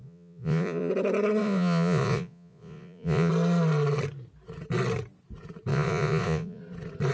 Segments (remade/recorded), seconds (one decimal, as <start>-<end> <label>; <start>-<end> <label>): 0.0-0.9 remade; 0.9-1.4 recorded; 1.4-3.3 remade; 3.3-5.7 recorded; 5.7-6.6 remade; 6.6-7.1 recorded